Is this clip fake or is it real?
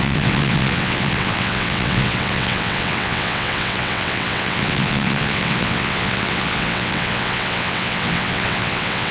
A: fake